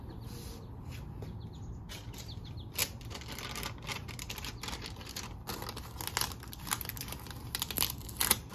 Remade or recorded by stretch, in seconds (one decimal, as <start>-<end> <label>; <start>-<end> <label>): 0.0-8.5 recorded

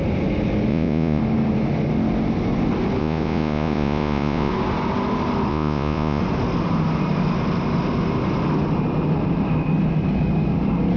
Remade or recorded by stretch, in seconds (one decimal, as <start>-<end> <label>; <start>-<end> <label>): 0.0-0.7 recorded; 0.7-1.2 remade; 1.2-3.0 recorded; 3.0-4.5 remade; 4.5-5.5 recorded; 5.5-6.2 remade; 6.2-11.0 recorded

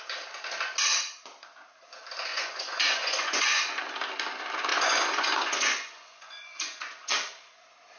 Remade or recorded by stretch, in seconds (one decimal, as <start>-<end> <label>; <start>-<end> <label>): 0.0-2.3 recorded; 2.3-3.6 remade; 3.6-4.7 recorded; 4.7-7.1 remade; 7.1-8.0 recorded

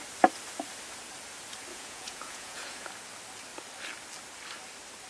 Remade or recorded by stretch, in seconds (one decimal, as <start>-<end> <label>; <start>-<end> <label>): 0.0-1.7 recorded; 1.7-2.9 remade; 2.9-5.1 recorded